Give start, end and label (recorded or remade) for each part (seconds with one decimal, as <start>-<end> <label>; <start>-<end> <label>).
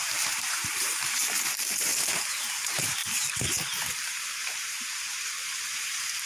0.0-1.9 remade; 1.9-2.5 recorded; 2.5-6.3 remade